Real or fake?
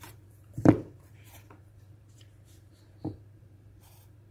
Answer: fake